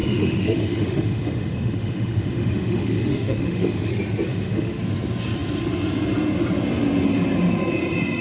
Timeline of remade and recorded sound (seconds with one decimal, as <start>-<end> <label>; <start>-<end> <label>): 0.0-3.9 remade; 3.9-4.3 recorded; 4.3-4.8 remade; 4.8-8.2 recorded